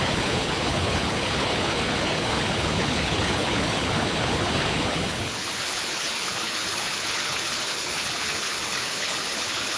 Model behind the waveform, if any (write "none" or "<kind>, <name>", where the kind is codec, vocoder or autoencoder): codec, HILCodec